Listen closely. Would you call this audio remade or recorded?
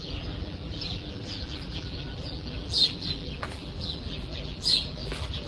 remade